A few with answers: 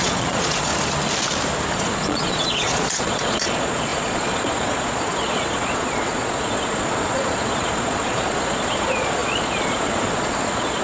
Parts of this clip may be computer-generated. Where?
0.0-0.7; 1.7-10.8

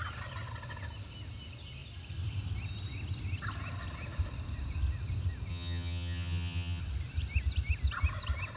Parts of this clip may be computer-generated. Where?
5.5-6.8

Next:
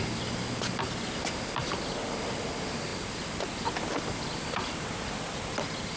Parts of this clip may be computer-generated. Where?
none